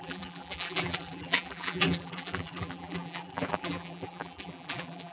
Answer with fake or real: fake